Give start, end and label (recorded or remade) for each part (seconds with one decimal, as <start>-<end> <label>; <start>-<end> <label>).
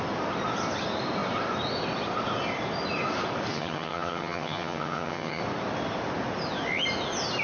0.0-3.5 recorded; 3.5-5.4 remade; 5.4-7.4 recorded